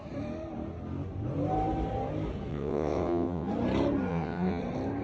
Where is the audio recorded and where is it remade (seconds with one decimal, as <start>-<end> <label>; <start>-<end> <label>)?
0.0-2.5 recorded; 2.5-3.5 remade; 3.5-4.1 recorded; 4.1-4.6 remade; 4.6-5.0 recorded